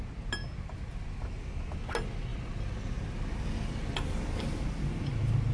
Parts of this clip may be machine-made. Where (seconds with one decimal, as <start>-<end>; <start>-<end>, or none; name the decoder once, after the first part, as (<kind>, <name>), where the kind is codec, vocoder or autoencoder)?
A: none